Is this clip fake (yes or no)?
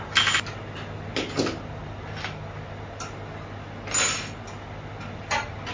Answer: no